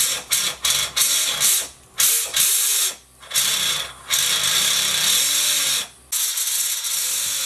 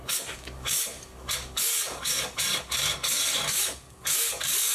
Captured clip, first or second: first